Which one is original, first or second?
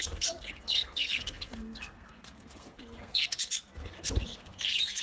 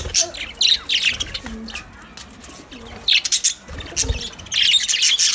second